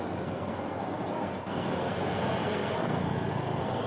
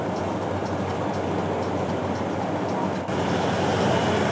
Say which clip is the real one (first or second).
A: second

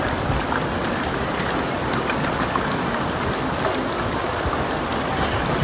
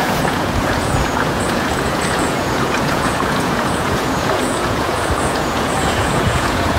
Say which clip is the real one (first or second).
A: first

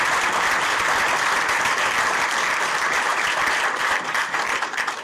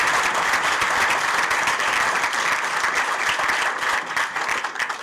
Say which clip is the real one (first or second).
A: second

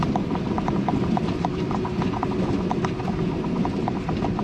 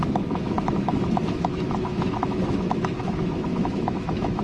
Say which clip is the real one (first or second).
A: first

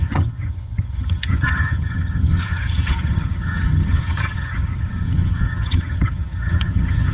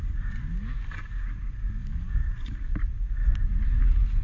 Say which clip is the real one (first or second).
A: second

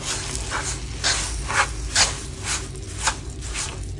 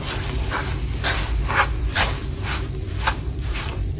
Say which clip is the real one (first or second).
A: first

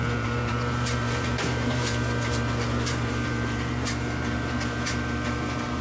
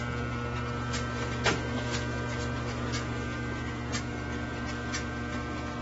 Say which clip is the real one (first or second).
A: second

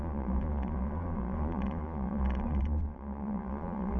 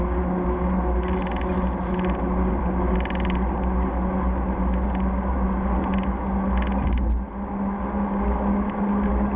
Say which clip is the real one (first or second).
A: second